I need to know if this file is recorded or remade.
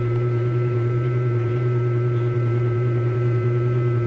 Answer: remade